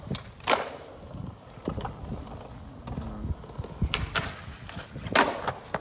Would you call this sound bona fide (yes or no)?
yes